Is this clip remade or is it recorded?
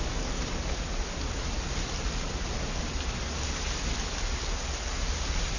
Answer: recorded